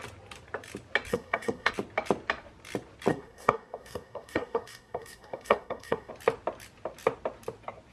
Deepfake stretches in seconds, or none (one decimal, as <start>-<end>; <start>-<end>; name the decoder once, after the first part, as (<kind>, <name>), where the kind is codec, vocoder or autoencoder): 1.1-1.7 (codec, SNAC); 3.1-6.1